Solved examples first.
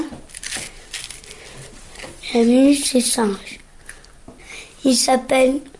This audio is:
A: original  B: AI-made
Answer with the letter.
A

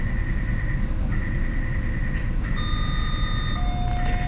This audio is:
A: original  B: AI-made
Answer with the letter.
A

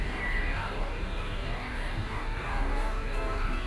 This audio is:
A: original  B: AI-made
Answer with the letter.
B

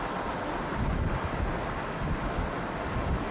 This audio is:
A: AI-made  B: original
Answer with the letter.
B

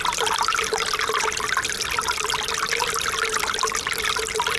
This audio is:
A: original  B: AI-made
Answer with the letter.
A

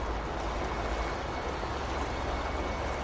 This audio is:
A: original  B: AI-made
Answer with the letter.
A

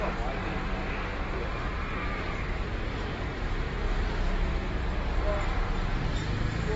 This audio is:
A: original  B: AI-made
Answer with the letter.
A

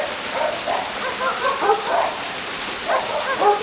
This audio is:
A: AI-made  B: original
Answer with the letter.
B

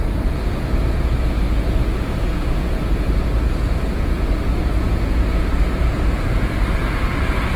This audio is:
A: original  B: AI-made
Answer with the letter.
B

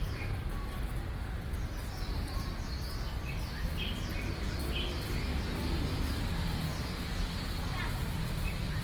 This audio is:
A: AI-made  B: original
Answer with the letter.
B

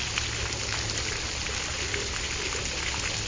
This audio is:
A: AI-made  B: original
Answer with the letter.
B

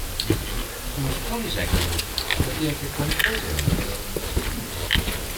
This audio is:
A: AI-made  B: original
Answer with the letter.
B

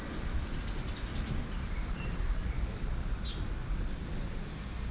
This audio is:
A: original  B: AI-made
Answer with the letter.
A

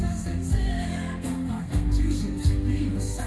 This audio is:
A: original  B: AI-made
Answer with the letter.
B